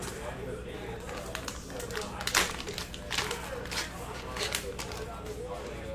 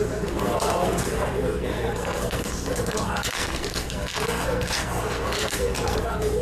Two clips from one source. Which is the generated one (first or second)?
second